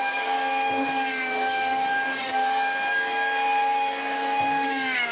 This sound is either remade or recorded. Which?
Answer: remade